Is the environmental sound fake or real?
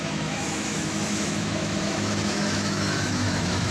fake